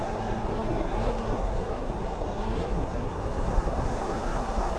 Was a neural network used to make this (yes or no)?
yes